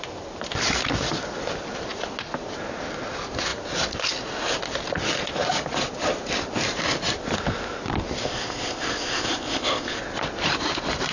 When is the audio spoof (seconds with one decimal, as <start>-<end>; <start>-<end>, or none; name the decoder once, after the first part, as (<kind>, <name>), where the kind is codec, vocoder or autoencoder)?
8.2-10.0 (codec, ZipCodec)